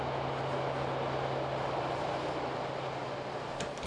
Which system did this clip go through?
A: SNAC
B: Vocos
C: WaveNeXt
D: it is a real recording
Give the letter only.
D